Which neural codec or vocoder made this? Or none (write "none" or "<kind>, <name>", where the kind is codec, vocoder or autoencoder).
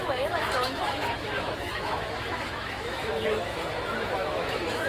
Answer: autoencoder, DAC-VAE